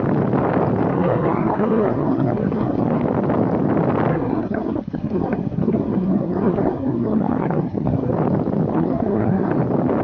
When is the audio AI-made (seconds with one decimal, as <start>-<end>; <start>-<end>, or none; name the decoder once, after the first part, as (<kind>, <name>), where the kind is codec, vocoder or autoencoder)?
0.9-3.0 (codec, SNAC); 4.1-8.1; 8.7-9.5